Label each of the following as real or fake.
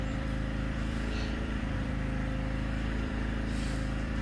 fake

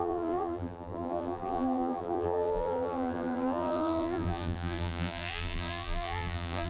fake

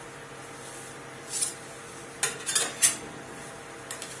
real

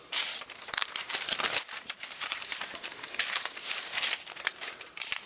fake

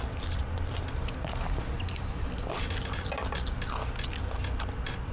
real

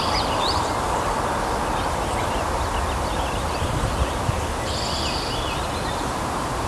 real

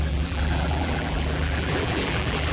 fake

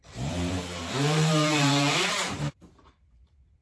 fake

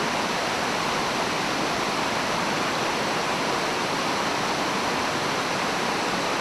real